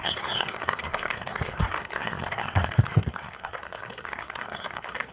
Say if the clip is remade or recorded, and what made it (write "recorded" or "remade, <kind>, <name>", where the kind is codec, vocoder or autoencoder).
remade, codec, SNAC